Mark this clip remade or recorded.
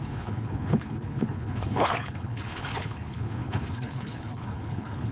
remade